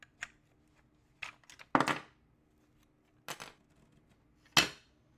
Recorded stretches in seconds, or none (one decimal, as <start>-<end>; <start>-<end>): 0.0-5.2